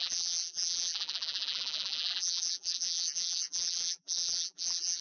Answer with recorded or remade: remade